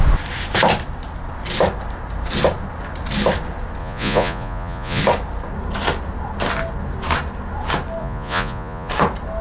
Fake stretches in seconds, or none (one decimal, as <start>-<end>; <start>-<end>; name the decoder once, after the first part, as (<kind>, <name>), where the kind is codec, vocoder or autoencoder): 3.8-5.0 (vocoder, Vocos); 8.0-8.9